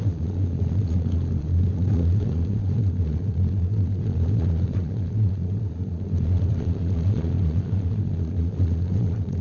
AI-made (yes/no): yes